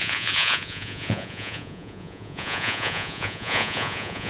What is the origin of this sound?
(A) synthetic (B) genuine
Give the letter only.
A